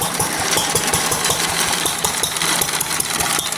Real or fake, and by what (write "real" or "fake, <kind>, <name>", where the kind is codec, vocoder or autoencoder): fake, vocoder, BigVGAN v2